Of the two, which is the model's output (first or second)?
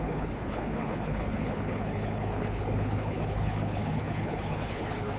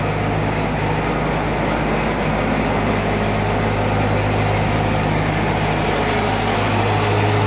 first